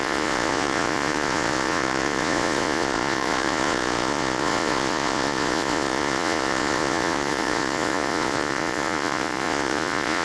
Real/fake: fake